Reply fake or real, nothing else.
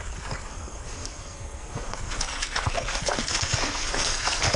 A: fake